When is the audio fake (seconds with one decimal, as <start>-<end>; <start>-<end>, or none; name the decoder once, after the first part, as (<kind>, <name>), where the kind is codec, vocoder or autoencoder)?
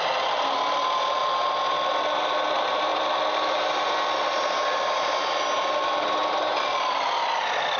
none